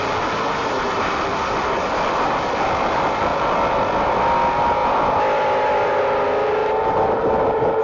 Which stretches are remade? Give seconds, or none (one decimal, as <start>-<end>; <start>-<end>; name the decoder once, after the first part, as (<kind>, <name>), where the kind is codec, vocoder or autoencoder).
4.8-6.0 (vocoder, BigVGAN v2); 6.6-7.8